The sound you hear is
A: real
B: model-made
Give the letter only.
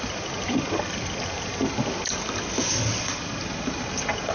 A